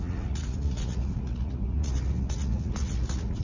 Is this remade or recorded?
remade